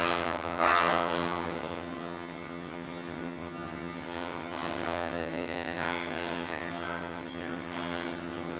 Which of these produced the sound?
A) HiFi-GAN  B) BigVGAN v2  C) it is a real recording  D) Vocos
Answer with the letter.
A